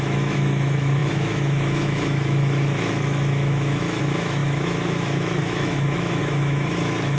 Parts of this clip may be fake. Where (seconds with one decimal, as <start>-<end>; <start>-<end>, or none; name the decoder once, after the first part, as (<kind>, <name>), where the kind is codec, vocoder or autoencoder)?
0.0-7.2 (autoencoder, DAC-VAE)